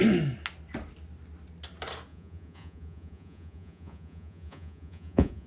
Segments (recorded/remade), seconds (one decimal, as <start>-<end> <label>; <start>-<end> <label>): 0.0-2.1 recorded; 2.1-5.5 remade